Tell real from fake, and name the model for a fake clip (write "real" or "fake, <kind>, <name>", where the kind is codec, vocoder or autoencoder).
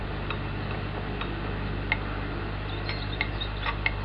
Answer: real